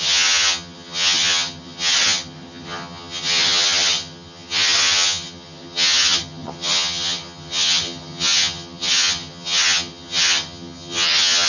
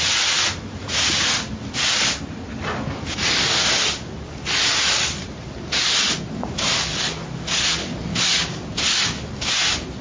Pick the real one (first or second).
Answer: second